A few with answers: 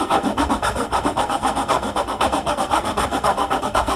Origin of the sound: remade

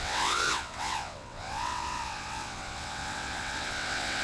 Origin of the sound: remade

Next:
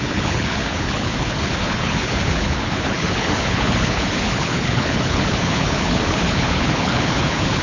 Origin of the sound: remade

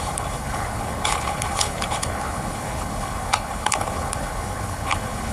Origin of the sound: remade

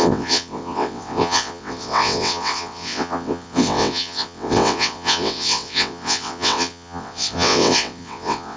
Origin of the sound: remade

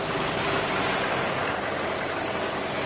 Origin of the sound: recorded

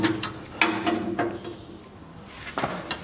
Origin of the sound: recorded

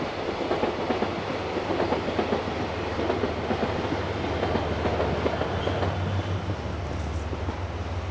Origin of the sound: recorded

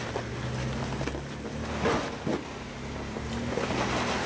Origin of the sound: recorded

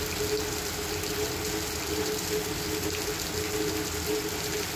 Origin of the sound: recorded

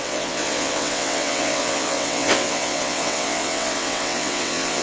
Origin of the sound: remade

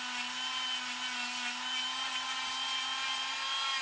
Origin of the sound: recorded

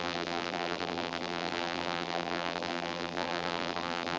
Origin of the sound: remade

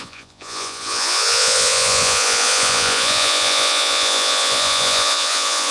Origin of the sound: remade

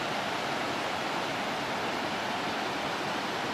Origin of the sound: recorded